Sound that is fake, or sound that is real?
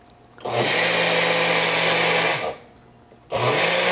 real